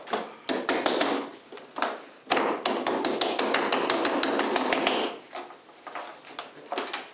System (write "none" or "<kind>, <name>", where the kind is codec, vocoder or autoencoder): none